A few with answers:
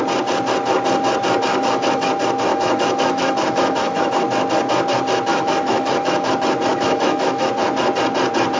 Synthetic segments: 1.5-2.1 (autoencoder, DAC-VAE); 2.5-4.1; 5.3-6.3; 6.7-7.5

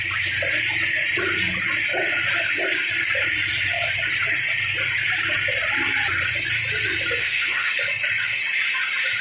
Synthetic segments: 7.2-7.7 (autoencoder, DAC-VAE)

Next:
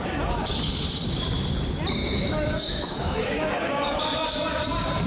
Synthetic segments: 2.0-4.0 (autoencoder, DAC-VAE)

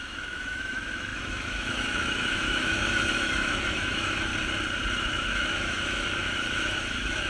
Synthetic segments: 0.0-4.3 (autoencoder, DAC-VAE); 5.0-7.3

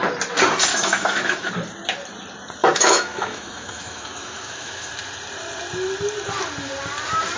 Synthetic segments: 0.7-1.5 (autoencoder, DAC-VAE); 2.6-4.9

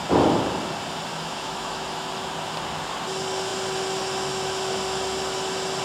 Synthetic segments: 1.1-2.1 (autoencoder, DAC-VAE)

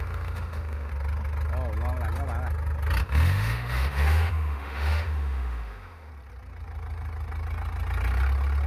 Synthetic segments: 0.0-0.9 (autoencoder, DAC-VAE); 3.0-6.1